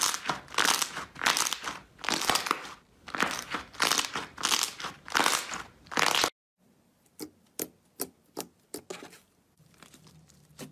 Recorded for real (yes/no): yes